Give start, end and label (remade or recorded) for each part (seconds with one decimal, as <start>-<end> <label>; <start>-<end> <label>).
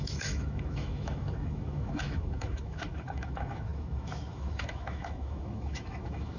0.0-6.4 remade